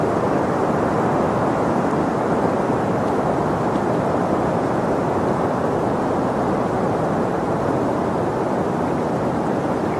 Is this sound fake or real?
fake